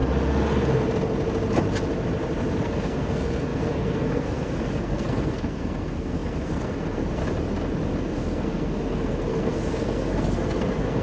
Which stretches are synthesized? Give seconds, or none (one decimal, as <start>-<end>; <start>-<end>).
2.6-7.2; 8.0-11.0